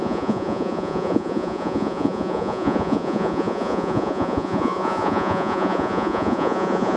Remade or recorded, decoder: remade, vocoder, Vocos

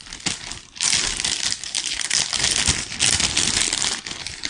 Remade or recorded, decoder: recorded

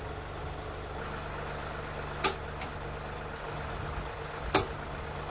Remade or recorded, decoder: recorded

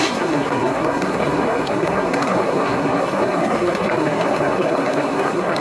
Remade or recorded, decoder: remade, codec, SNAC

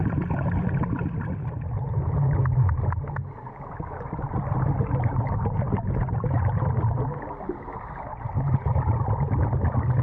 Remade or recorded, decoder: recorded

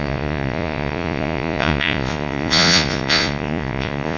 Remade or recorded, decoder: remade, vocoder, Vocos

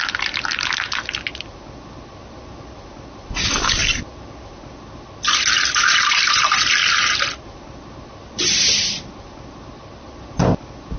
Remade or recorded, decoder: recorded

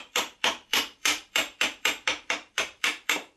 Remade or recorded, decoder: remade, vocoder, BigVGAN v2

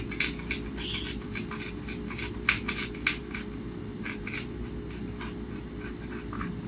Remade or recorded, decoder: recorded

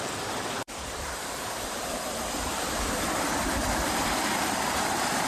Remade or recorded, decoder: remade, vocoder, BigVGAN v2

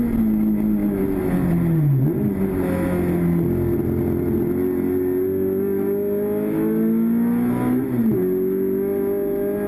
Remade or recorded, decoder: recorded